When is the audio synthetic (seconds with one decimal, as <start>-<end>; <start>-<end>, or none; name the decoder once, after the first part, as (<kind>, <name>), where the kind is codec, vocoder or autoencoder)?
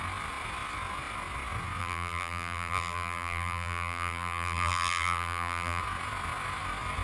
1.8-5.8 (vocoder, BigVGAN v2)